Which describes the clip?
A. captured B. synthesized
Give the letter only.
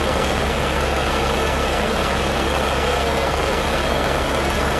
B